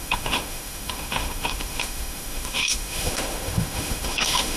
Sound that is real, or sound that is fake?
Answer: fake